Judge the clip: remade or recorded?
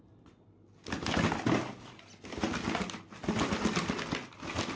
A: recorded